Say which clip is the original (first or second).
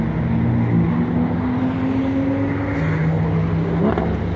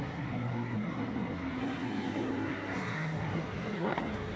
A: first